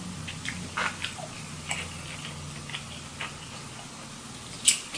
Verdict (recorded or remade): recorded